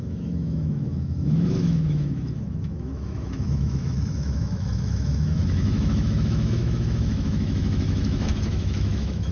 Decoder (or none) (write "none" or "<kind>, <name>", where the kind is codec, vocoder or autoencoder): autoencoder, DAC-VAE